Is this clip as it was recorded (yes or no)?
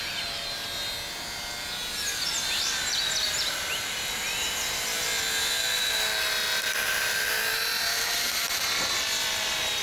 no